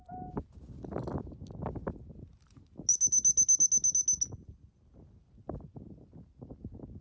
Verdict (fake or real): real